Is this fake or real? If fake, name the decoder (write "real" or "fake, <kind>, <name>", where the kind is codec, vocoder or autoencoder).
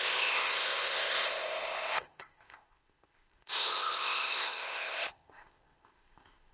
fake, codec, ZipCodec